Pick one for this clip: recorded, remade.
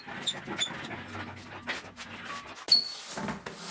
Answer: recorded